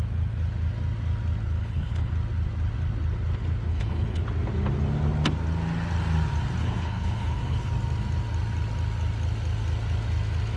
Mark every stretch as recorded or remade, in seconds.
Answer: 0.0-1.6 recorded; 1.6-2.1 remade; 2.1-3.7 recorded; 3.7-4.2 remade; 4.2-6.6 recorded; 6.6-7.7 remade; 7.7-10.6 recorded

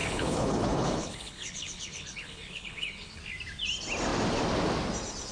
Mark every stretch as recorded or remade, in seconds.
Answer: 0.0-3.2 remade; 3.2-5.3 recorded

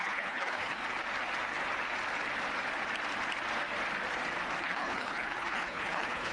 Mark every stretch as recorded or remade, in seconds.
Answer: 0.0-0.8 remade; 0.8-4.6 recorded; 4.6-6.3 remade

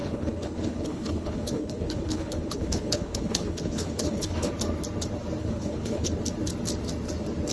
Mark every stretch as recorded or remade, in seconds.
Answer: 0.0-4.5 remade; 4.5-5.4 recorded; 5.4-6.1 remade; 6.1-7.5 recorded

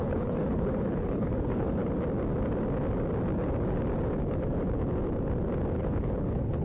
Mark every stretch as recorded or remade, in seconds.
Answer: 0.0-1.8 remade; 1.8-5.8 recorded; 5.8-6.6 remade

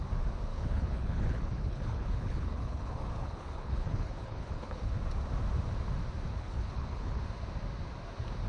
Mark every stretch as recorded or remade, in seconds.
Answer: 0.0-0.5 recorded; 0.5-5.0 remade; 5.0-6.3 recorded; 6.3-7.2 remade; 7.2-8.5 recorded